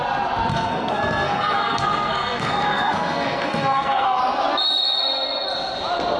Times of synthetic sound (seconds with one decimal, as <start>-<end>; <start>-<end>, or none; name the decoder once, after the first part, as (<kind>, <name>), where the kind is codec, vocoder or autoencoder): 0.5-4.2 (codec, SNAC)